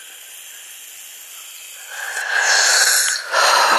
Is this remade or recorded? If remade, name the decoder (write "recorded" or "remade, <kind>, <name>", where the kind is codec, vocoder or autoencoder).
recorded